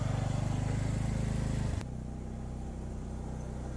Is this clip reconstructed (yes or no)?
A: no